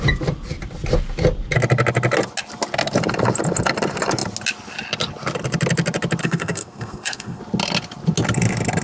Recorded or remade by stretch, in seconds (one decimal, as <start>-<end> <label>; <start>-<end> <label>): 0.0-6.2 recorded; 6.2-7.4 remade; 7.4-8.8 recorded